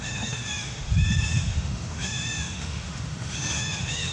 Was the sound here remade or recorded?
remade